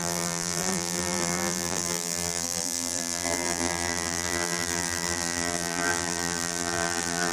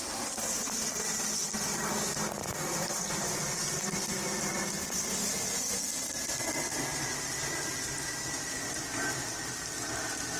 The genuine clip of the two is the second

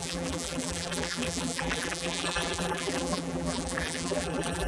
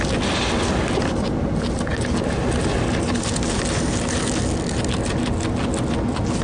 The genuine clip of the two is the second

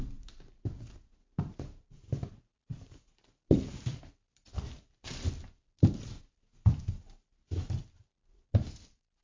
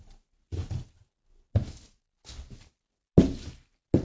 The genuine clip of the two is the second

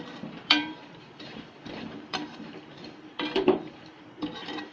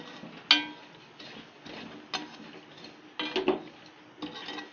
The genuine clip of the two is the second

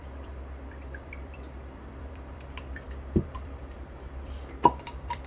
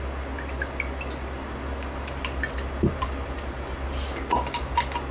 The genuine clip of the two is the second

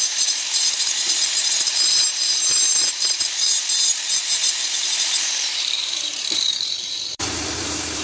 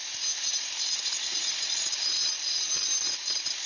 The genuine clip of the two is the second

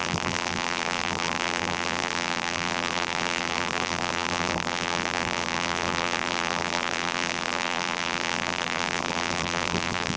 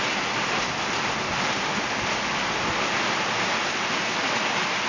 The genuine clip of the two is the second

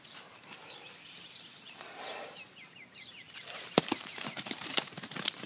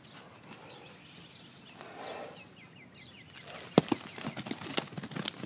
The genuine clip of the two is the second